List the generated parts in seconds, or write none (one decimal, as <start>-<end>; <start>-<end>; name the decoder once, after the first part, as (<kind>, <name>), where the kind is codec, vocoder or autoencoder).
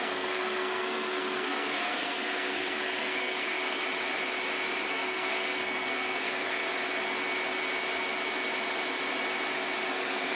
0.0-3.8 (codec, SNAC); 4.9-6.6; 9.9-10.4